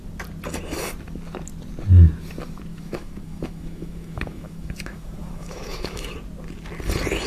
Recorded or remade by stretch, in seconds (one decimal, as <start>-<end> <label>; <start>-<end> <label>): 0.0-2.7 recorded; 2.7-6.1 remade; 6.1-7.3 recorded